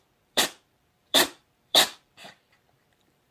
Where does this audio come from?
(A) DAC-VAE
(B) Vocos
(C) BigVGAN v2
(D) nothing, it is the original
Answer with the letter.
C